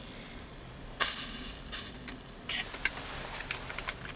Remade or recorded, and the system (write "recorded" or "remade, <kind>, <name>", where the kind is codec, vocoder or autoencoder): recorded